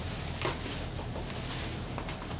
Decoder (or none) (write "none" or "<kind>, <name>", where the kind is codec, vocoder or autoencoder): none